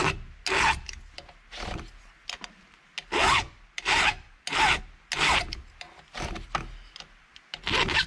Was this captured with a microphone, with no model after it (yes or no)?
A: yes